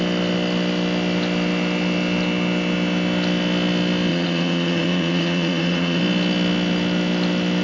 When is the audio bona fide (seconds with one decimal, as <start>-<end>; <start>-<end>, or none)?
0.0-4.1; 6.0-7.6